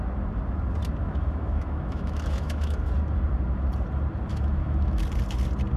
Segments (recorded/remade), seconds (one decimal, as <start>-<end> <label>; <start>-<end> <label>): 0.0-1.0 recorded; 1.0-2.9 remade; 2.9-4.3 recorded; 4.3-5.0 remade; 5.0-5.8 recorded